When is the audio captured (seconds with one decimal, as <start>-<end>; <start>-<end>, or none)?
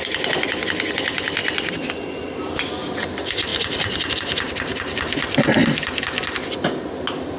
0.0-7.4